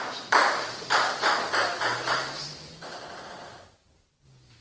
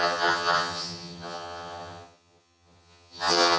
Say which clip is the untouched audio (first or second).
first